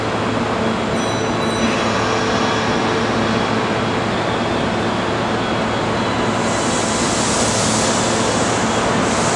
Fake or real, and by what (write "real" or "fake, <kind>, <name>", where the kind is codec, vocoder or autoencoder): real